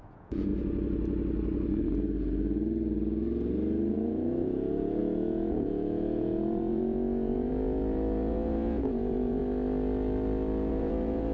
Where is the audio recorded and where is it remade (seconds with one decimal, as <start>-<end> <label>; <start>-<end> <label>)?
0.0-0.5 remade; 0.5-3.9 recorded; 3.9-9.4 remade; 9.4-10.7 recorded; 10.7-11.3 remade